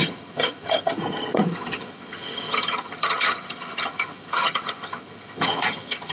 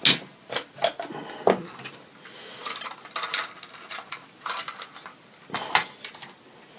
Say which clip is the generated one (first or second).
first